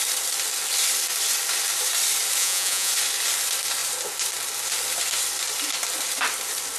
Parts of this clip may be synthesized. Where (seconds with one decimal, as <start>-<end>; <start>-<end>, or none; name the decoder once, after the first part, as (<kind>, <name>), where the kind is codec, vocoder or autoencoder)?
2.4-2.9 (vocoder, Vocos)